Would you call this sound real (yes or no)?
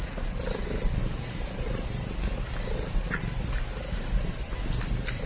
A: yes